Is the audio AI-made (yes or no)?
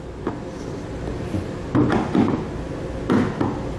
no